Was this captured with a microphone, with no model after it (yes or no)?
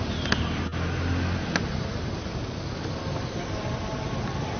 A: yes